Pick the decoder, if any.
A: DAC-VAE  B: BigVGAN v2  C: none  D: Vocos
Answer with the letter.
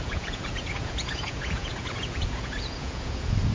D